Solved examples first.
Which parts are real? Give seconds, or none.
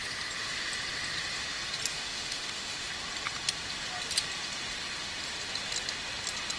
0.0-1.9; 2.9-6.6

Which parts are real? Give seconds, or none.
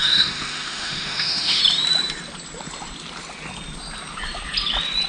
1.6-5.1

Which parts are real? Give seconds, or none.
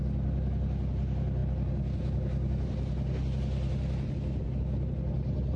0.0-5.6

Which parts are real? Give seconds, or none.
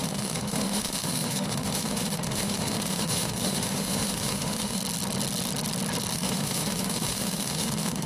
4.8-6.1